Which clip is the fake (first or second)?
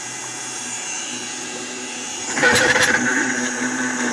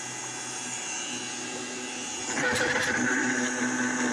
first